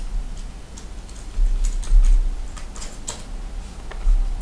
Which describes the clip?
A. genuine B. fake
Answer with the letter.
A